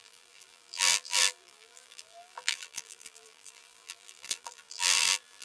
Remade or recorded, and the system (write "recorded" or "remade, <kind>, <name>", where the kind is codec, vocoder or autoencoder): remade, vocoder, BigVGAN v2